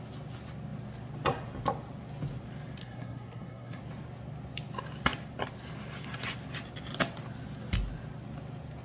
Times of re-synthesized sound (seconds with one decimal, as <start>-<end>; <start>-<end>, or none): 2.8-3.8